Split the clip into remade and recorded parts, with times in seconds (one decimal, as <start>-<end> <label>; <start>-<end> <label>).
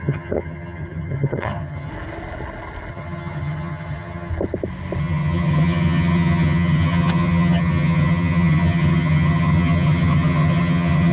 0.0-1.9 remade; 1.9-2.9 recorded; 2.9-4.3 remade; 4.3-5.0 recorded; 5.0-11.1 remade